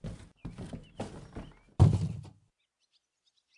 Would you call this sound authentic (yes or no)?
yes